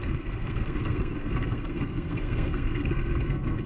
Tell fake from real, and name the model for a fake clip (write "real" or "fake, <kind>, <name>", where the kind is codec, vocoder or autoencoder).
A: fake, codec, SNAC